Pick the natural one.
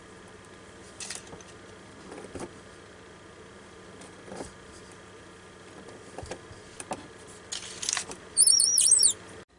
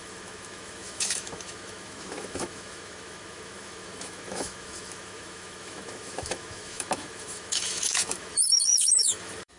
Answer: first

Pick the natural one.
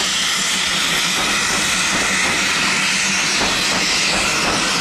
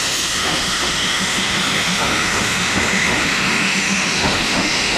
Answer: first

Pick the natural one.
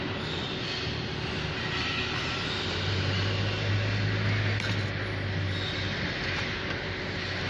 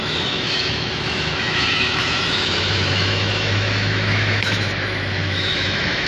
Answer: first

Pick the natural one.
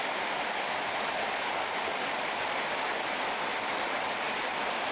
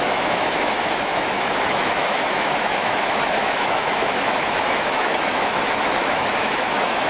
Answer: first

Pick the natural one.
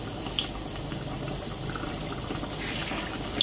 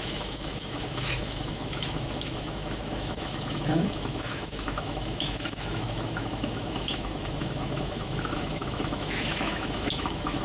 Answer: first